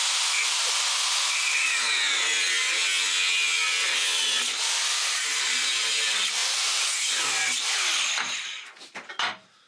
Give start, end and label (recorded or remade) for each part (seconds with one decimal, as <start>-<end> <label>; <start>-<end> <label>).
0.0-9.7 recorded